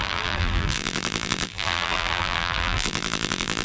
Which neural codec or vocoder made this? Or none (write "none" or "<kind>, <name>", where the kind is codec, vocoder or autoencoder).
vocoder, BigVGAN v2